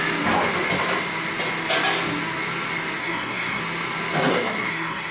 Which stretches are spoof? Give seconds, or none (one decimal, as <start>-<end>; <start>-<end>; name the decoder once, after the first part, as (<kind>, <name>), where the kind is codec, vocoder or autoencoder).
3.0-3.6 (codec, SNAC); 4.3-5.1